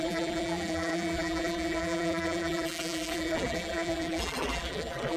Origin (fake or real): fake